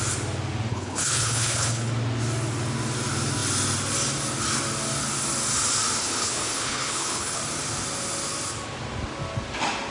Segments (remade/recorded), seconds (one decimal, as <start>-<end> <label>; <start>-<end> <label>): 0.0-0.7 recorded; 0.7-1.9 remade; 1.9-6.0 recorded; 6.0-7.4 remade; 7.4-9.9 recorded